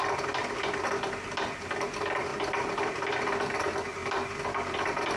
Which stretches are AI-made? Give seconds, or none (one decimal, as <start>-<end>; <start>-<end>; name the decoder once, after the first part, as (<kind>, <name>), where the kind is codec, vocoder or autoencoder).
0.4-1.6 (vocoder, BigVGAN v2); 2.3-3.6